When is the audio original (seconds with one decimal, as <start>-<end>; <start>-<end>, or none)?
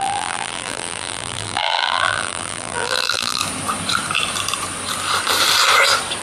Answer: 3.4-6.2